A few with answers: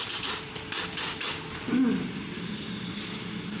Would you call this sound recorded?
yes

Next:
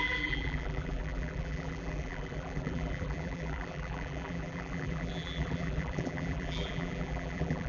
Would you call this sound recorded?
no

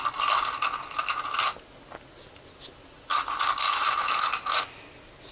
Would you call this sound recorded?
yes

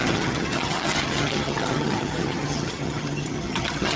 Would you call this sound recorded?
no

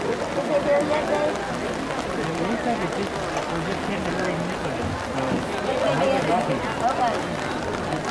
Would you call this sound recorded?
yes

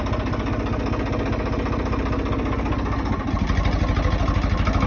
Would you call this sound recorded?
yes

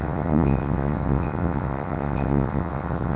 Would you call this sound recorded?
no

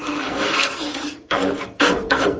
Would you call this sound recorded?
no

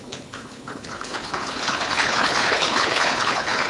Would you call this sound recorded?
no